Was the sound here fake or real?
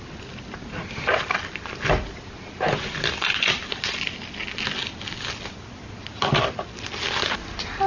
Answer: real